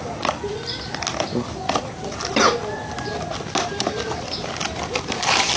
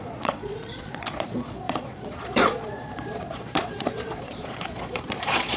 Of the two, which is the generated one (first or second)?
second